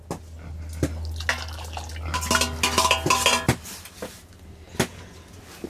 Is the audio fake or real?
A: real